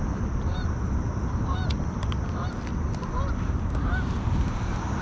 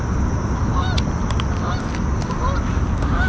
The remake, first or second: first